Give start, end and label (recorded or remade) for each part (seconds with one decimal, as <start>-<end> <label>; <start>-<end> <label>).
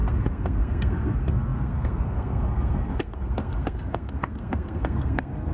0.0-5.5 remade